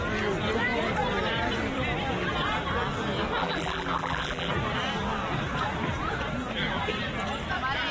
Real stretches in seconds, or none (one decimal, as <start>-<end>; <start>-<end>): 0.0-3.4; 4.5-7.9